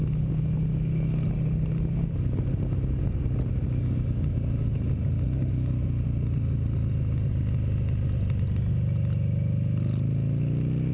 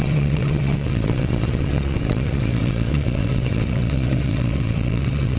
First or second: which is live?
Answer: first